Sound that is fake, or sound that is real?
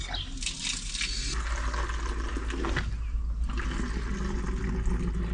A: real